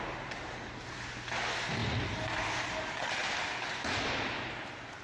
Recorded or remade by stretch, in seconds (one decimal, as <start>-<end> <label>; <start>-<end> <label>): 0.0-5.0 recorded